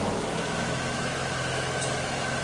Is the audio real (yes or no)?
no